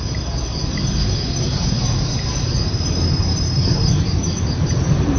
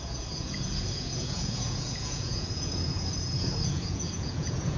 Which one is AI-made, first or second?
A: second